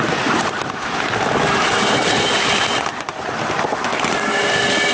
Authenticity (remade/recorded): recorded